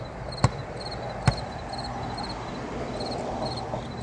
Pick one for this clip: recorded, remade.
recorded